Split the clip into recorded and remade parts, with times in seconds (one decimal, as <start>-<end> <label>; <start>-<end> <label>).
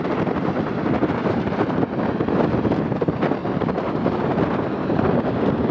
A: 0.0-1.2 recorded; 1.2-1.8 remade; 1.8-3.4 recorded; 3.4-4.1 remade; 4.1-5.7 recorded